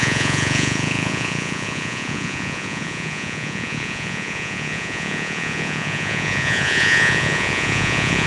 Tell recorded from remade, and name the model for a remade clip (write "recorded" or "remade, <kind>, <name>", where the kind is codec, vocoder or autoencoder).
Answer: remade, vocoder, Vocos